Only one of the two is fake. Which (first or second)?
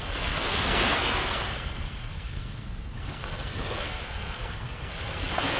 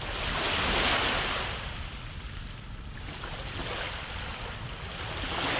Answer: first